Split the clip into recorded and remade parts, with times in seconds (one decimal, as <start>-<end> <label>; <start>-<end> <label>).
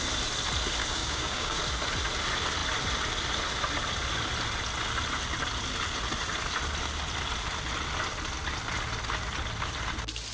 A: 0.0-0.8 recorded; 0.8-1.6 remade; 1.6-10.3 recorded